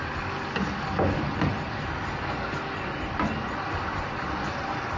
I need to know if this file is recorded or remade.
recorded